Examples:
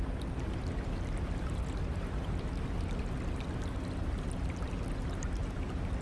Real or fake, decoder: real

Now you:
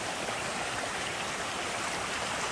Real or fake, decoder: real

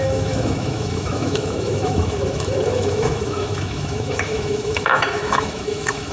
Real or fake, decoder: fake, autoencoder, DAC-VAE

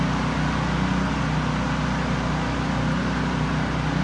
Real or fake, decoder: real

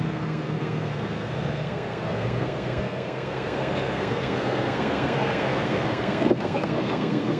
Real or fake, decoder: fake, codec, SNAC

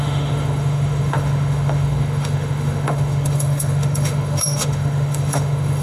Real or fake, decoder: fake, autoencoder, DAC-VAE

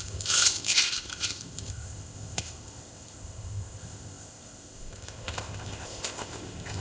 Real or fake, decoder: fake, codec, ZipCodec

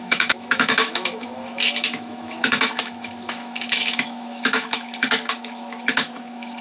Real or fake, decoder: fake, autoencoder, DAC-VAE